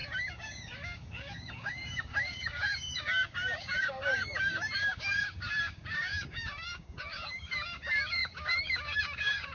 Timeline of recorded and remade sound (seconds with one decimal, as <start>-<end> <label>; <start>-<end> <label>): 0.0-9.5 remade